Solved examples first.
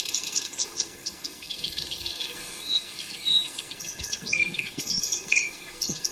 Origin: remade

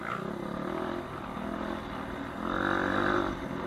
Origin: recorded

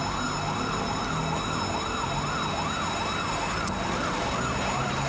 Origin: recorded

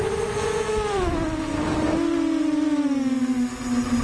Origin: recorded